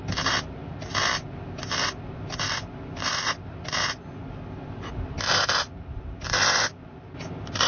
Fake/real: real